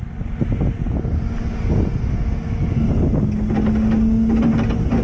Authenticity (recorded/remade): recorded